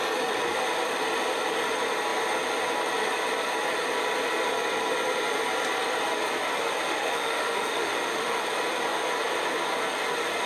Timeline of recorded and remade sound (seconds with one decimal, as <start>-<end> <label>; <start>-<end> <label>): 0.0-6.9 recorded; 6.9-8.4 remade; 8.4-10.5 recorded